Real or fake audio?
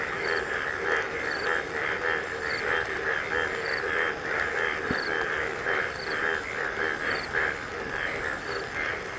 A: real